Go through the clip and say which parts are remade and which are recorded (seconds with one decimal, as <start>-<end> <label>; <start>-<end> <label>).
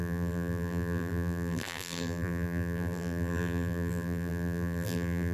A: 0.0-5.3 remade